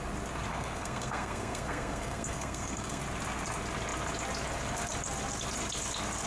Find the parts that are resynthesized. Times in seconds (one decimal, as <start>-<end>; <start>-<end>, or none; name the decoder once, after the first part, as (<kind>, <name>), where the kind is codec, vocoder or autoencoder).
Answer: 0.5-3.0 (codec, SNAC)